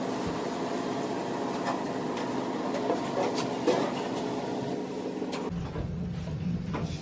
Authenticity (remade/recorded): recorded